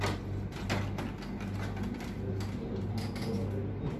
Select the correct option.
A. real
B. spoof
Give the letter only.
A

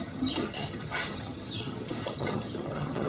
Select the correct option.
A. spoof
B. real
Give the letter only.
A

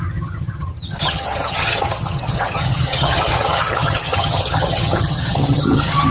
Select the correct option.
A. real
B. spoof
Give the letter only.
B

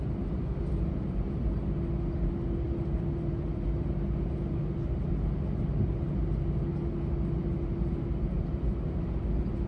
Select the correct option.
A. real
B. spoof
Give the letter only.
A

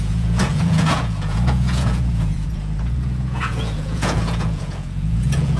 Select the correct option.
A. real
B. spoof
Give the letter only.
B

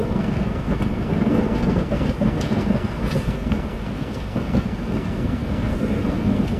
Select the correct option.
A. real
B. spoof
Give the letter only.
B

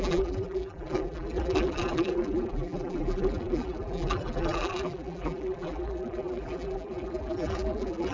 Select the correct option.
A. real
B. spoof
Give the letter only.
B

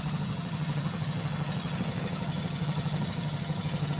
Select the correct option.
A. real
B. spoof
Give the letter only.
B